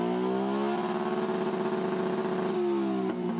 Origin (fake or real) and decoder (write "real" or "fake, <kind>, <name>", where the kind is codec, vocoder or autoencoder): real